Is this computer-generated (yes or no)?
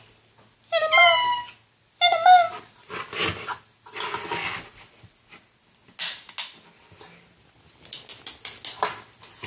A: no